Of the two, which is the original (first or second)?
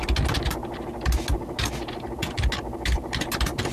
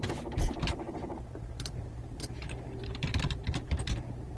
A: first